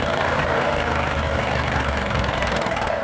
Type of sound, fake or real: fake